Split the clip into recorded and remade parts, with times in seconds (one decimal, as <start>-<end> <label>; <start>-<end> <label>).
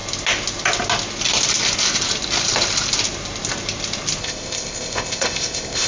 0.0-4.2 recorded; 4.2-5.9 remade